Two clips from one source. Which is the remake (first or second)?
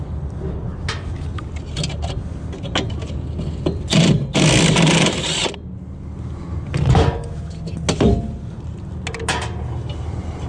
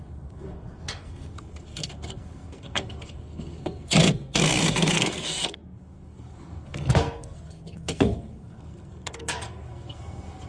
second